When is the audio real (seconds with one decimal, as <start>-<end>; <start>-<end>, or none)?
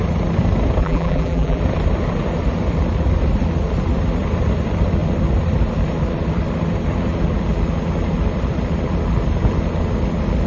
0.0-0.8; 1.6-10.5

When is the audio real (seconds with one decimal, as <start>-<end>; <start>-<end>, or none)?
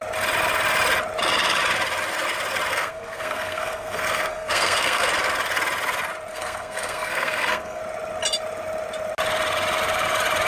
0.0-2.7; 5.1-6.3; 7.8-10.5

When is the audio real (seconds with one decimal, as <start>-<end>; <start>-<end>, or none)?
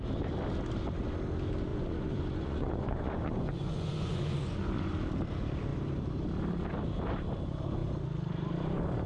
0.0-1.7; 4.9-9.1